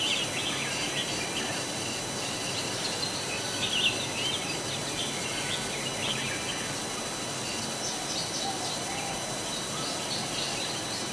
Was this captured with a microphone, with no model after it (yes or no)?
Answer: yes